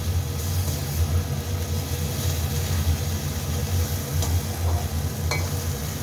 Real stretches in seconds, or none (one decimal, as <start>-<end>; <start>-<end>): 0.0-6.0